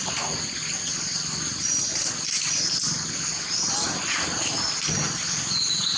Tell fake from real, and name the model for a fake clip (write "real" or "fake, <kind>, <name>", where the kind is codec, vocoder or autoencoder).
real